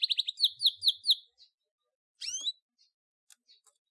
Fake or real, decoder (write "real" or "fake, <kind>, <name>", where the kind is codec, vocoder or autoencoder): real